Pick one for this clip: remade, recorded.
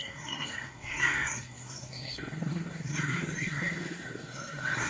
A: remade